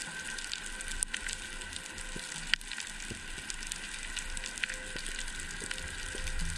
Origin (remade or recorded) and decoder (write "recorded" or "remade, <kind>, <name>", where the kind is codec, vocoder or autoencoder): recorded